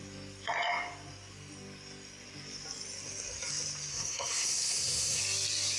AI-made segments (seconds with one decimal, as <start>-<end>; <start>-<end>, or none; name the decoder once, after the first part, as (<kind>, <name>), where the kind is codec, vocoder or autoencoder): 3.9-5.2 (codec, SNAC)